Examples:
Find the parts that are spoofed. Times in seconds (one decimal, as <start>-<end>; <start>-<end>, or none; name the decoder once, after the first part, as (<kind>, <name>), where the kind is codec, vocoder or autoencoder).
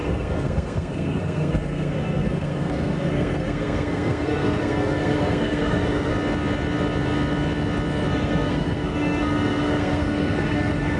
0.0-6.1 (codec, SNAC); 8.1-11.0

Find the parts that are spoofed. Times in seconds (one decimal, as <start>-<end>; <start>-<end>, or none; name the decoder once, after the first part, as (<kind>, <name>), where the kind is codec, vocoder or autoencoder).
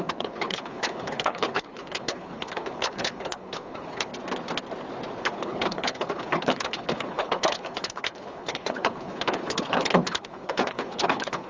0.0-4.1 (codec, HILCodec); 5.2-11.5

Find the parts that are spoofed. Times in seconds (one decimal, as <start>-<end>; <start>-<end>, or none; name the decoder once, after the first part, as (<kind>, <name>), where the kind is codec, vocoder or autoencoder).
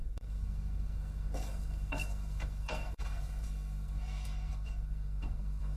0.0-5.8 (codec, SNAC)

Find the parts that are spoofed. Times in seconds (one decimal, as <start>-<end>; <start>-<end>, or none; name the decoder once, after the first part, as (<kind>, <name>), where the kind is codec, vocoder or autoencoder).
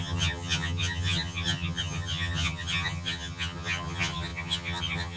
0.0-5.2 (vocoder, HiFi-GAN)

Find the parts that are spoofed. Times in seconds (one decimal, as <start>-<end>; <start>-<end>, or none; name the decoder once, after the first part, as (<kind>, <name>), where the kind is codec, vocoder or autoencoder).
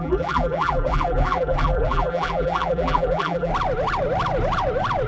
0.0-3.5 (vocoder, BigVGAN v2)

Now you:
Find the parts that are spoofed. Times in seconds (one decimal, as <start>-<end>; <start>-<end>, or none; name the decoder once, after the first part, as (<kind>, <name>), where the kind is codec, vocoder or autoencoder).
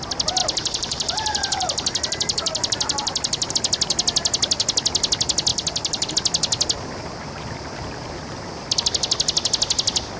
0.4-3.5 (vocoder, BigVGAN v2); 5.5-6.1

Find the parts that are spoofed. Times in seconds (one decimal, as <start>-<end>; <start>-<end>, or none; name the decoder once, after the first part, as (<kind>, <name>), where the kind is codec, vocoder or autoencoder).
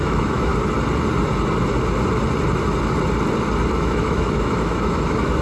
0.0-0.5 (autoencoder, DAC-VAE); 3.7-5.4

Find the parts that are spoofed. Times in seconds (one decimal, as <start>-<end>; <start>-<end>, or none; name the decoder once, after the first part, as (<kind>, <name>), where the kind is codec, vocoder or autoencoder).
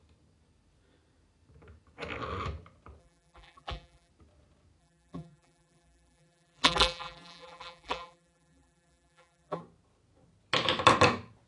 3.0-4.1 (vocoder, BigVGAN v2); 4.8-9.6